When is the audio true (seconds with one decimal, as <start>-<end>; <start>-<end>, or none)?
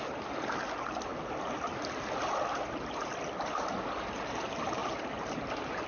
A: 0.0-5.9